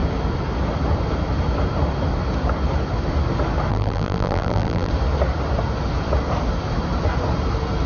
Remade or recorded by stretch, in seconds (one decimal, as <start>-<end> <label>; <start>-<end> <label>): 0.0-3.7 recorded; 3.7-4.9 remade; 4.9-7.9 recorded